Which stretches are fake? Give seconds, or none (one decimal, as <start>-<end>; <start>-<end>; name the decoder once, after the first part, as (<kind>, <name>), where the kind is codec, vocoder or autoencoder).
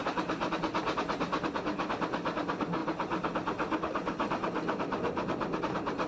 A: none